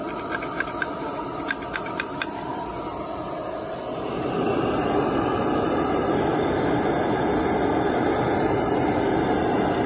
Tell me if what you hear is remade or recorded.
recorded